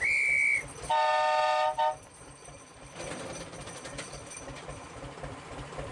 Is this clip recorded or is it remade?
recorded